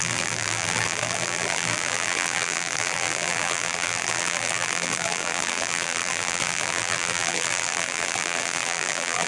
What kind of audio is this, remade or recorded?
remade